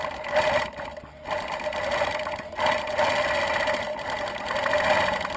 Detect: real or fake real